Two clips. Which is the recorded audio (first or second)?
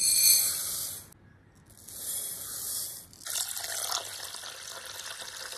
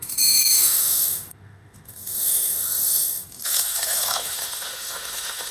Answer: first